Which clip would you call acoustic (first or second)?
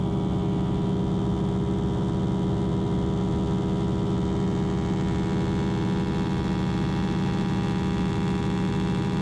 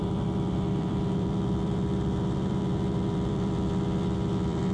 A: first